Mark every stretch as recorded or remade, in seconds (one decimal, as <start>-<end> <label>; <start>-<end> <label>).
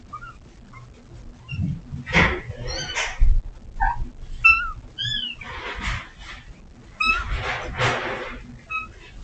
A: 0.0-9.2 recorded